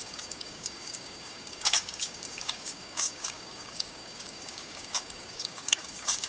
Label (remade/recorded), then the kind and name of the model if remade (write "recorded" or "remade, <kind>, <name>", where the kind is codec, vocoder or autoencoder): remade, codec, DAC